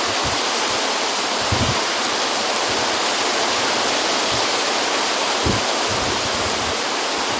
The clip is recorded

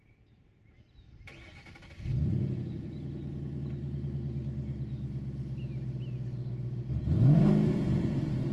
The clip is recorded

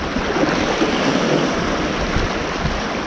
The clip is recorded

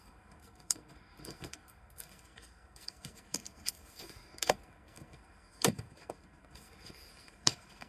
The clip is remade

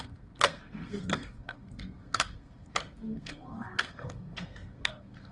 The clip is remade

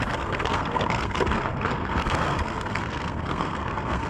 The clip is remade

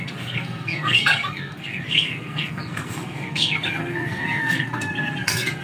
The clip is remade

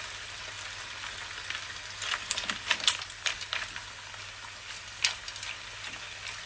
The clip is recorded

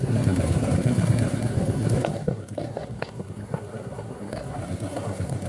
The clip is remade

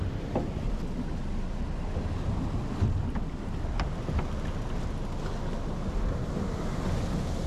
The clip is recorded